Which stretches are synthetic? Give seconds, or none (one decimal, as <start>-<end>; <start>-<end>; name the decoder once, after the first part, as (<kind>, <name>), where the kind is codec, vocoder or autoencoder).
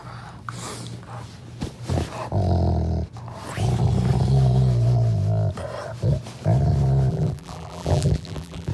7.1-8.7 (vocoder, BigVGAN v2)